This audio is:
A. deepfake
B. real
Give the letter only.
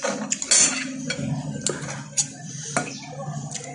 B